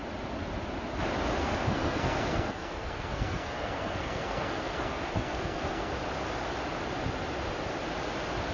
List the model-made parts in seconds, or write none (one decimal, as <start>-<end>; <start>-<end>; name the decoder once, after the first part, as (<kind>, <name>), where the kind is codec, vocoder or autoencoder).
1.4-5.9 (codec, SNAC)